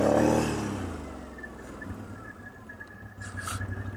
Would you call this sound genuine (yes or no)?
yes